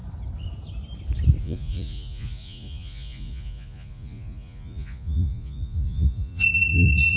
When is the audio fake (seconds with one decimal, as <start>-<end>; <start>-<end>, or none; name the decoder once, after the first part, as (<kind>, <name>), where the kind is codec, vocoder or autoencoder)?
1.4-7.2 (vocoder, Vocos)